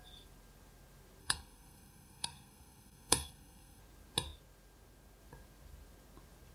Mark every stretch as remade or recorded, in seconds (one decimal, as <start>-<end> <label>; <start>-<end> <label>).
0.0-1.2 recorded; 1.2-3.8 remade; 3.8-6.5 recorded